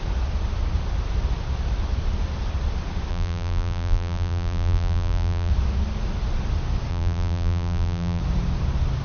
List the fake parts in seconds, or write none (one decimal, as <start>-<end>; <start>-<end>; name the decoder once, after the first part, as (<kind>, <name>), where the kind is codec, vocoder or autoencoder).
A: 3.1-5.5 (vocoder, BigVGAN v2); 6.9-8.2

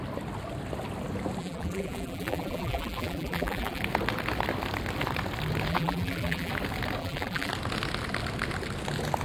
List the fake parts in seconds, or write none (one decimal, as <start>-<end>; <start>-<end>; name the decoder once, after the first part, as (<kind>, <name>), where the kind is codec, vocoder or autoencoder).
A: 1.4-3.8 (vocoder, BigVGAN v2); 5.7-6.5; 7.0-7.5